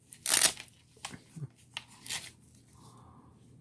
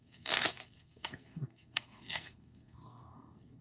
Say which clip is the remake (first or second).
second